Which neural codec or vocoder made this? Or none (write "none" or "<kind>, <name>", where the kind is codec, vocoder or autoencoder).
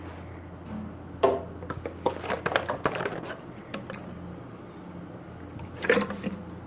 none